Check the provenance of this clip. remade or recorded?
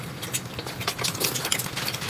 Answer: recorded